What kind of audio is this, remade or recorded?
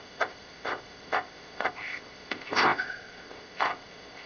remade